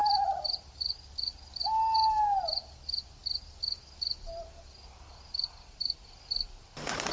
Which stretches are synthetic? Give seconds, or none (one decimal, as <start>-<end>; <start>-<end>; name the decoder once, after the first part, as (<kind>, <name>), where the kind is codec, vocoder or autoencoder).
none